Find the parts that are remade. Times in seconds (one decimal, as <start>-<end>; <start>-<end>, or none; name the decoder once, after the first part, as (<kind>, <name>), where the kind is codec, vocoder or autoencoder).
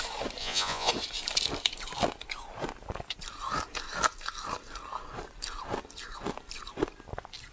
0.4-0.9 (vocoder, Vocos)